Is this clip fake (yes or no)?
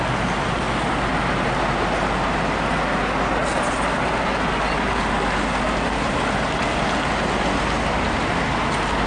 no